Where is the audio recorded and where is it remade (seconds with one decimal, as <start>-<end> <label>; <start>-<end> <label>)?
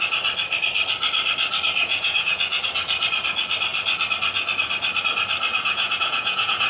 0.0-1.8 recorded; 1.8-2.4 remade; 2.4-5.5 recorded; 5.5-6.7 remade